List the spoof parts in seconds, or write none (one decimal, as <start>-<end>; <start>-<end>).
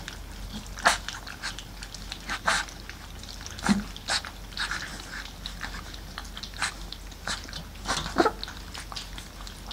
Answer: none